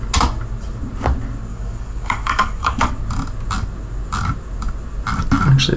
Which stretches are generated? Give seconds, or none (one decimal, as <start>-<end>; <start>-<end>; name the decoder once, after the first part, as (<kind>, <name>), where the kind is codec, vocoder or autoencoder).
1.5-2.9 (codec, DAC)